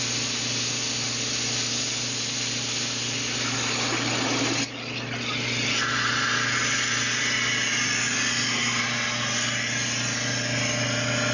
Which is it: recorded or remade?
recorded